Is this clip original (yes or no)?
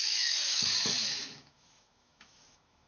no